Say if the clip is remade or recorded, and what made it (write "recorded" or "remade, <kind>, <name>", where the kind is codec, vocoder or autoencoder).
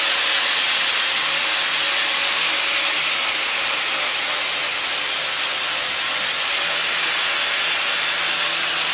recorded